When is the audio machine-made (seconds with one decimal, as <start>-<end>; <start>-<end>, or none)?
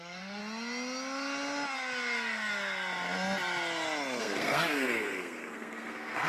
0.0-0.4; 4.2-6.3